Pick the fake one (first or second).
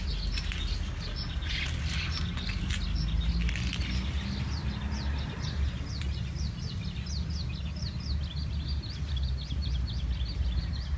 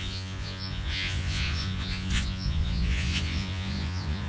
second